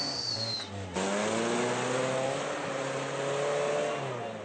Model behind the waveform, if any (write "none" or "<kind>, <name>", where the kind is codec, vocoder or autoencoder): none